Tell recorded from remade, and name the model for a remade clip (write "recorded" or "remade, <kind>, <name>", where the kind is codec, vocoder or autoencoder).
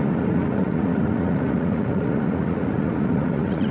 remade, vocoder, Vocos